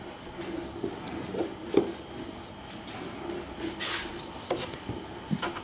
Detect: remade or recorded recorded